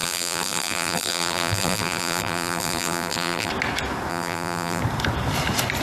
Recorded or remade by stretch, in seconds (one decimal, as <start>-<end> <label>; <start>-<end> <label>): 0.0-3.5 remade; 3.5-4.1 recorded; 4.1-4.8 remade; 4.8-5.8 recorded